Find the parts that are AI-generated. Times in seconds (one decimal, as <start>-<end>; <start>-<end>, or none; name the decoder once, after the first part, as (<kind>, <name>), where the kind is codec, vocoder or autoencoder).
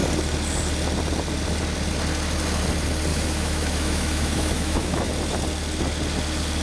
3.1-5.1 (autoencoder, DAC-VAE)